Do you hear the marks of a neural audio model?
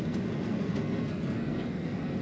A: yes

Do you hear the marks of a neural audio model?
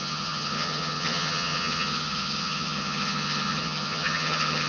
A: yes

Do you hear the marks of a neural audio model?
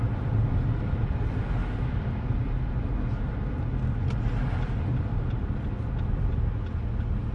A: no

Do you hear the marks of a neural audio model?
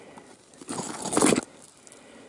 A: no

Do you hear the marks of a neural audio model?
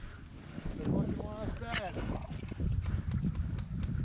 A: no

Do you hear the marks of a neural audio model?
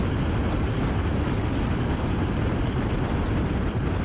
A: no